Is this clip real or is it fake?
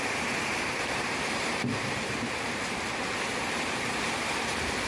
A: fake